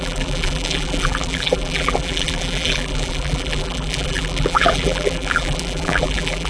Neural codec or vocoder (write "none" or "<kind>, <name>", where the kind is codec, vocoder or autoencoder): vocoder, BigVGAN v2